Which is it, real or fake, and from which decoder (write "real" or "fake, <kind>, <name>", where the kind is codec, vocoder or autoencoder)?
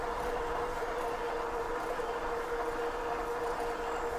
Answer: real